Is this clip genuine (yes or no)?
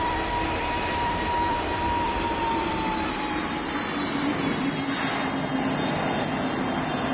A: yes